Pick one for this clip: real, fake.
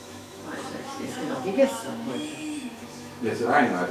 fake